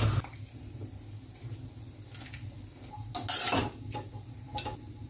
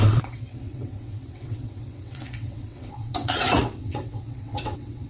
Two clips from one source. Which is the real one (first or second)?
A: first